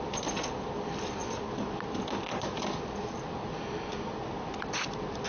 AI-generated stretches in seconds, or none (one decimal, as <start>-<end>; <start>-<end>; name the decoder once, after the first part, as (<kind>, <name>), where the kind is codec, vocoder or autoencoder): none